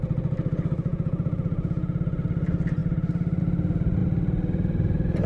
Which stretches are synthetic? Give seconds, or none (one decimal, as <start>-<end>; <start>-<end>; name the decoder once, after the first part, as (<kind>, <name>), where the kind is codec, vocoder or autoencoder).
0.9-2.0 (vocoder, Vocos)

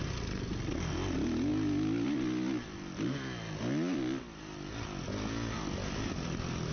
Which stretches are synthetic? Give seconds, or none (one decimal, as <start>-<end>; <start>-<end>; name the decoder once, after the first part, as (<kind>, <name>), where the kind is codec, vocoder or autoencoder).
none

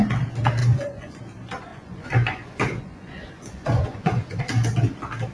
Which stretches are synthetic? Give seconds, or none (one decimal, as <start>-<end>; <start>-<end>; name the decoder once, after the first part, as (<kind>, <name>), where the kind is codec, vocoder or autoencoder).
0.6-1.2 (vocoder, Vocos); 1.7-4.4

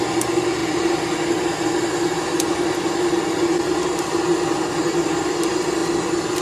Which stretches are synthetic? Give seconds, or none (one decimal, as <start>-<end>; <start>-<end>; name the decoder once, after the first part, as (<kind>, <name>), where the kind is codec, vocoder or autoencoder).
none